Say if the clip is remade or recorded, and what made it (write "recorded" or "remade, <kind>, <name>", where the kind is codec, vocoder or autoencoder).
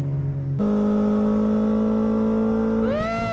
recorded